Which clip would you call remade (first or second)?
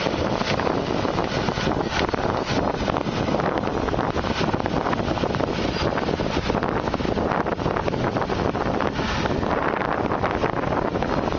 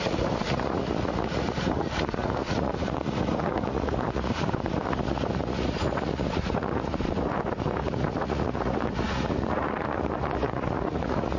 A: second